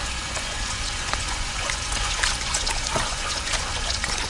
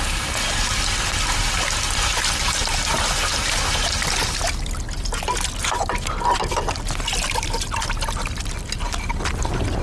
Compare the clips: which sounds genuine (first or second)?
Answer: second